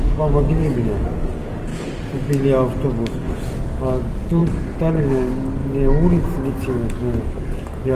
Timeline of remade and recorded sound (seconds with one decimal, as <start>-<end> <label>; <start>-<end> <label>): 0.0-1.7 remade; 1.7-3.1 recorded; 3.1-4.4 remade; 4.4-5.0 recorded; 5.0-5.6 remade; 5.6-6.5 recorded; 6.5-7.9 remade